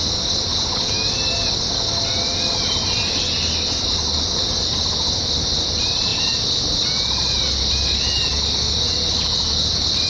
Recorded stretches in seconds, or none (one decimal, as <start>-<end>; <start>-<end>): 0.0-10.1